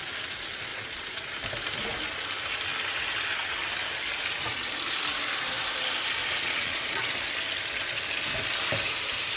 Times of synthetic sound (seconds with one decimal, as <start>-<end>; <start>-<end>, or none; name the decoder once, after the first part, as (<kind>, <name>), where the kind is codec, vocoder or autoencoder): 0.7-1.2 (vocoder, Vocos); 6.2-7.0